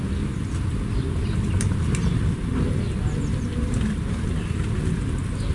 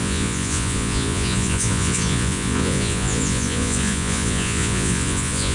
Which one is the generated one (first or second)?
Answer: second